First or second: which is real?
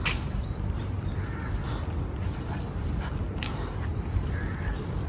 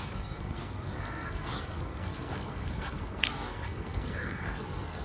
first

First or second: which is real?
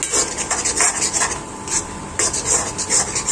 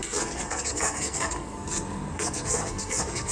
first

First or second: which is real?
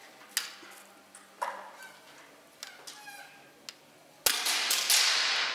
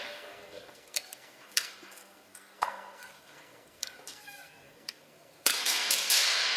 first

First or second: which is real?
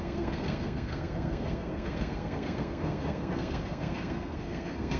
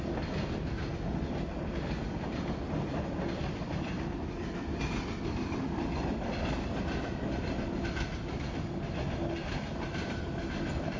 second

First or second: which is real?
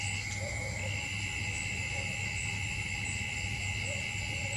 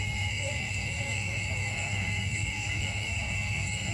first